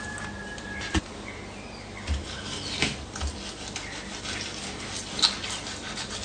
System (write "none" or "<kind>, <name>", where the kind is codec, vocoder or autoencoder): none